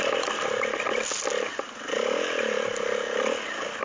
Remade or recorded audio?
recorded